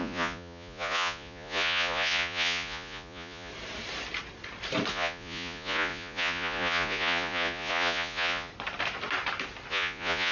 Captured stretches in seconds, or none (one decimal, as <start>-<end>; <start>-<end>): 3.5-4.9; 8.5-9.7

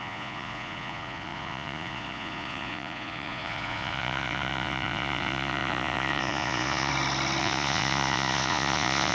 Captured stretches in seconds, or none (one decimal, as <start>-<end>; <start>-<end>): 6.9-7.4

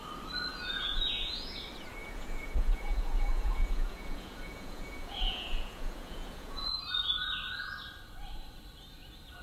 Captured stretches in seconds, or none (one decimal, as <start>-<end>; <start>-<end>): 0.0-0.5; 1.6-2.0; 6.8-9.4

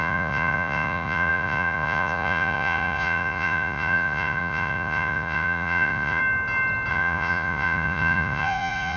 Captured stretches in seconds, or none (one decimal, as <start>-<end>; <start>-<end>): 6.2-6.9

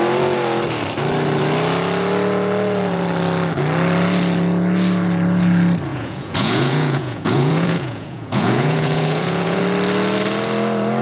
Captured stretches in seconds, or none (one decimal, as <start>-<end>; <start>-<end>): 0.0-5.9; 9.6-11.0

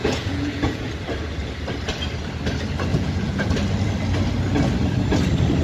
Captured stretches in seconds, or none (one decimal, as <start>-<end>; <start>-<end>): 0.9-2.9; 3.5-5.6

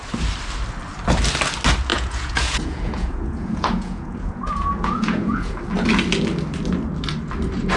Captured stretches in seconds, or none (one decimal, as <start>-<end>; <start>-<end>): 0.0-1.9; 5.6-7.8